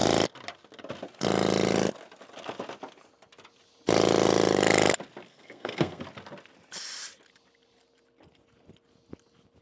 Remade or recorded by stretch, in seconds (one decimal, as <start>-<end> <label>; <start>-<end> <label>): 0.0-5.3 recorded; 5.3-6.0 remade; 6.0-9.6 recorded